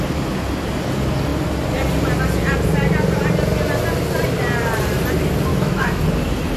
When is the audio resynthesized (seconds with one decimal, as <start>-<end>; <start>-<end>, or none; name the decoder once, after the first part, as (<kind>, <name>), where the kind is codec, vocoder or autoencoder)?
5.5-6.0 (autoencoder, DAC-VAE)